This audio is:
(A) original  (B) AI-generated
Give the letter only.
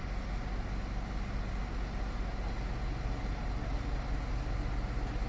A